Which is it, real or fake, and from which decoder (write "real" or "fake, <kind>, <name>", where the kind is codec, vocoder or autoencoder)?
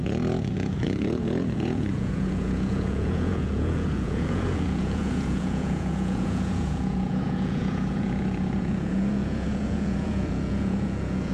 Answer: fake, vocoder, Vocos